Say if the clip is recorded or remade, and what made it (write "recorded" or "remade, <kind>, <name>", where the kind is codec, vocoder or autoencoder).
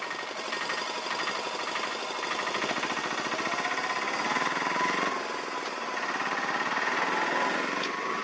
recorded